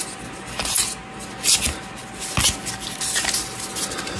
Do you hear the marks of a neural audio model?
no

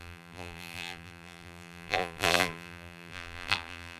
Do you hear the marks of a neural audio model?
yes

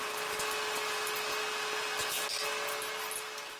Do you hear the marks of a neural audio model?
no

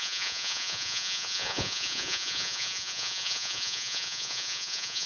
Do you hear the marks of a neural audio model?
yes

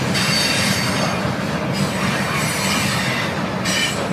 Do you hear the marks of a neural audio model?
no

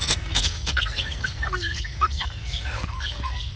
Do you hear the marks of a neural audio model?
yes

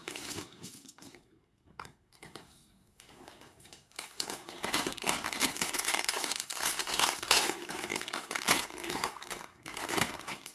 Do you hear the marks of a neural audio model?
yes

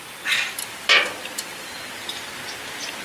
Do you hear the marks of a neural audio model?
no